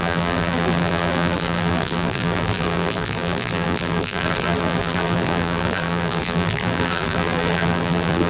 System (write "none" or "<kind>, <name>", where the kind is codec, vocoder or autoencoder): vocoder, BigVGAN v2